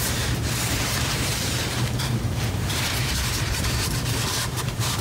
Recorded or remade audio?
remade